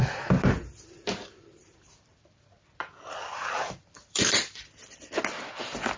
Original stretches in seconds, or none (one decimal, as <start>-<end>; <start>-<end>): 0.0-1.6; 5.2-6.0